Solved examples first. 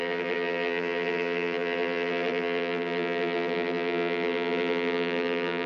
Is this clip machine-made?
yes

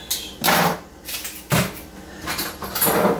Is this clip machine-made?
no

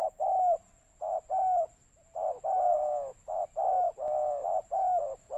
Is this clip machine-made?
no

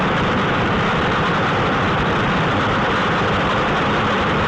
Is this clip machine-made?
yes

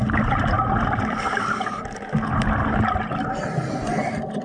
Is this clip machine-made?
no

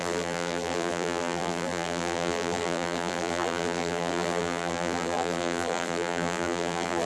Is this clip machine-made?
yes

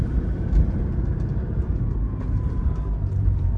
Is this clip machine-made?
yes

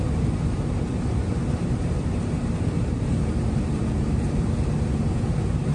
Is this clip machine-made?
yes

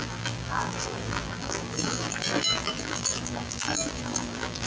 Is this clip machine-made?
yes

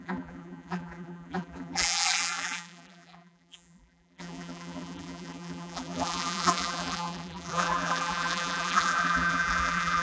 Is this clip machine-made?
yes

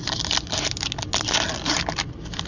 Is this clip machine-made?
no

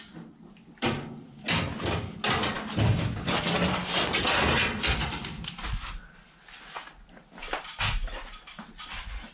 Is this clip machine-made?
no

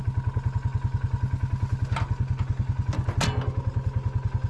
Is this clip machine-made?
no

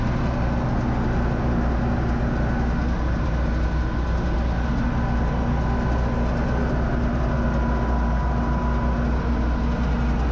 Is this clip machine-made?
no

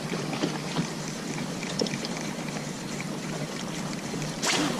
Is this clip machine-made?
yes